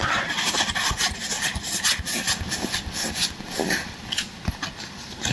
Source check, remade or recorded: recorded